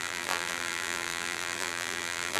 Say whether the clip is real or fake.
fake